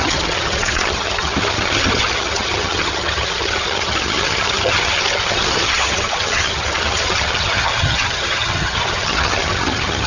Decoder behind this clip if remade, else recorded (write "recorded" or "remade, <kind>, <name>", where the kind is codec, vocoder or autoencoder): remade, vocoder, HiFi-GAN